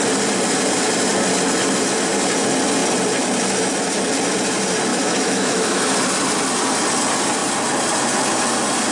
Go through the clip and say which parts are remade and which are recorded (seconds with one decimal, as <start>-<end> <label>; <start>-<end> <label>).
0.0-4.9 recorded; 4.9-5.8 remade; 5.8-8.9 recorded